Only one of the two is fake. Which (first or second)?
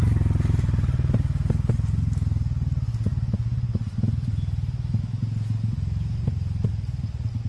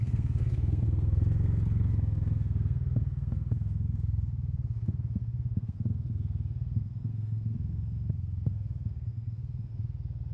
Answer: second